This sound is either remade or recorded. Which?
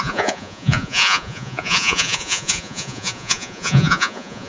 remade